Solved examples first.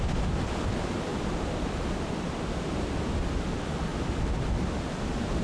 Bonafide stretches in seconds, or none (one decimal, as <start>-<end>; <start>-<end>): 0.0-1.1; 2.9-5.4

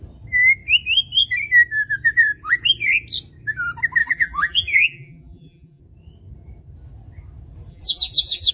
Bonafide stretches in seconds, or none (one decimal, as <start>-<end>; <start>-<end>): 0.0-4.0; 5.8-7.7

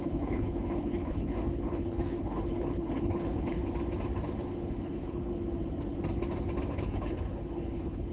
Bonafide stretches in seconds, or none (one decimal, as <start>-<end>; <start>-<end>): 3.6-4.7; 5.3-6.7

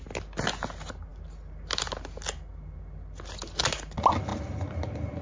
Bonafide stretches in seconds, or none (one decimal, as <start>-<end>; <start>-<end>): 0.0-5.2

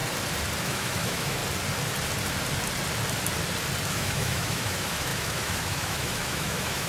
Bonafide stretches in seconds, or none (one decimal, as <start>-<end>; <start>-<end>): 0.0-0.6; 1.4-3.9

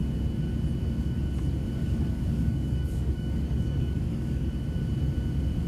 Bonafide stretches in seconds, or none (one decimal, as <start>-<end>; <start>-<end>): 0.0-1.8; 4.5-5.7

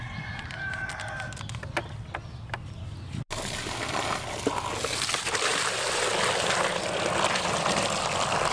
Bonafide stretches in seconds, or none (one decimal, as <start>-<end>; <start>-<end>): 0.0-8.5